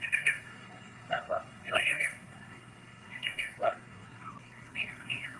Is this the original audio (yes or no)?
no